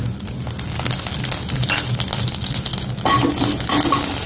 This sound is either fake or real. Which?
real